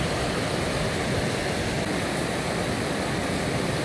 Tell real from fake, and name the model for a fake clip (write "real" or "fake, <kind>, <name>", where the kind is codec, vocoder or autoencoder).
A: real